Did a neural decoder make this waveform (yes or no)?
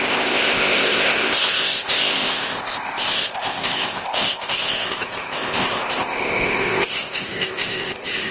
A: yes